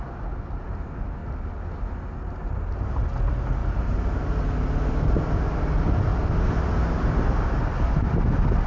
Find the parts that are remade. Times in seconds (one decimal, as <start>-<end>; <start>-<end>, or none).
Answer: none